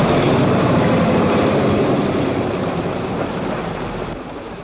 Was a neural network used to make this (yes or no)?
no